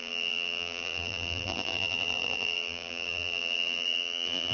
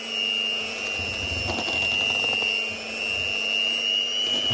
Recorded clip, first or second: second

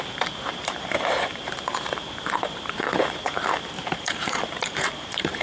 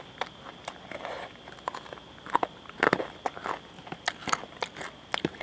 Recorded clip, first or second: second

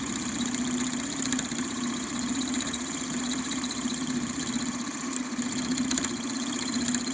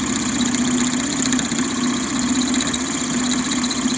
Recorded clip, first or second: second